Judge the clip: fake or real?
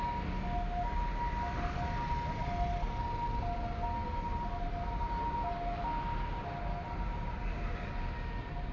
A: real